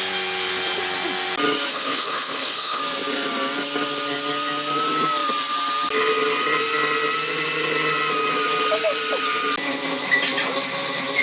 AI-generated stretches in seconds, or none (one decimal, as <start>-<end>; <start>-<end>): 1.7-2.8